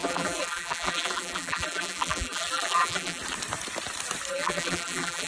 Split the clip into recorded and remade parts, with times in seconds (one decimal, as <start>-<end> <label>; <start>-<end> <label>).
0.0-3.2 remade; 3.2-4.3 recorded; 4.3-5.3 remade